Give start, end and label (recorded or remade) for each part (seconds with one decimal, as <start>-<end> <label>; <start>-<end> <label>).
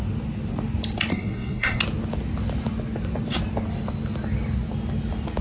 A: 0.0-1.1 recorded; 1.1-1.8 remade; 1.8-5.4 recorded